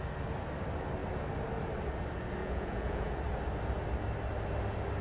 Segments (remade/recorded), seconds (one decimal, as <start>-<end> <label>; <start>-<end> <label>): 0.0-2.4 recorded; 2.4-3.1 remade; 3.1-5.0 recorded

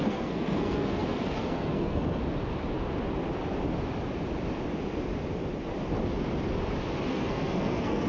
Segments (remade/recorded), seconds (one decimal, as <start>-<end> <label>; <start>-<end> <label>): 0.0-2.2 remade; 2.2-7.1 recorded; 7.1-8.1 remade

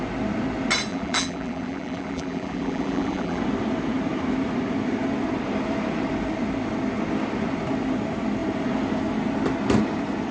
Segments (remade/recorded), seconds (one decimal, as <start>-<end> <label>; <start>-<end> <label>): 0.0-0.9 recorded; 0.9-3.4 remade; 3.4-10.3 recorded